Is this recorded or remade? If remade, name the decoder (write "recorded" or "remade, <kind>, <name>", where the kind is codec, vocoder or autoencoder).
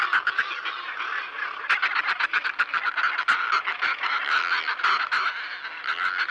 recorded